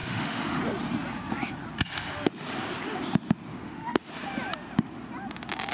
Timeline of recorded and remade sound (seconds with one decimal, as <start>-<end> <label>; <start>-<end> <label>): 0.0-0.6 remade; 0.6-3.5 recorded; 3.5-4.1 remade; 4.1-5.7 recorded